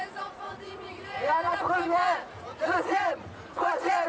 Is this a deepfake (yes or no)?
yes